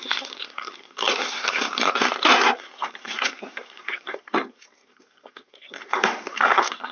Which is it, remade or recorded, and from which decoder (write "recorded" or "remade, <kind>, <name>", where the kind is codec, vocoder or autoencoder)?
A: remade, codec, SNAC